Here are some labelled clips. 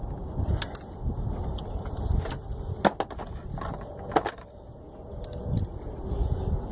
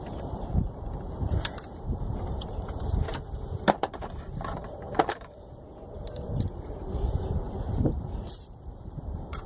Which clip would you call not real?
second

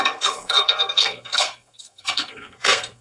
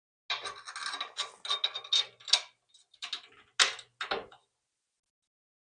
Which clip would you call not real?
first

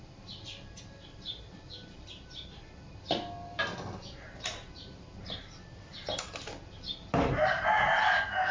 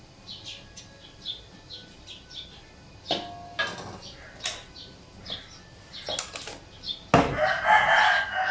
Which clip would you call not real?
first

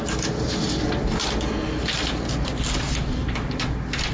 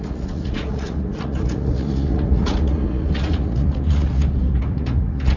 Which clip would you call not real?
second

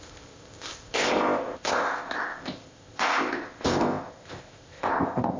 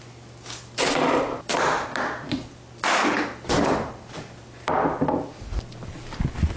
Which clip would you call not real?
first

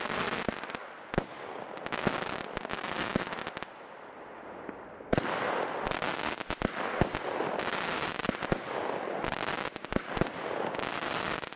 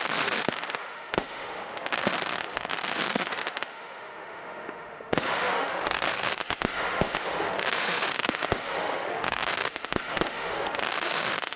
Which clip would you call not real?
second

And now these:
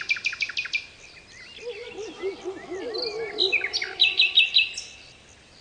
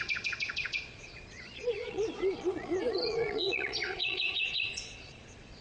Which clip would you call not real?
second